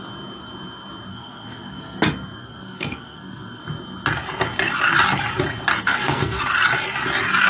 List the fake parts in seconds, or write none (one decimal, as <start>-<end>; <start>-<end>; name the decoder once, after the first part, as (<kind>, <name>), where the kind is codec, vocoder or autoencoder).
1.1-2.0 (codec, SNAC); 2.4-3.6; 5.8-6.4